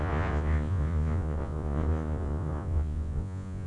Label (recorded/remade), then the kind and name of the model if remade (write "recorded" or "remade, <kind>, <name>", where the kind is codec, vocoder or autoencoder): remade, vocoder, Vocos